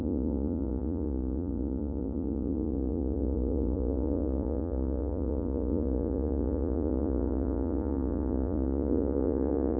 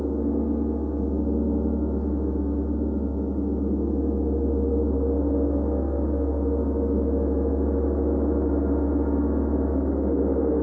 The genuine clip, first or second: second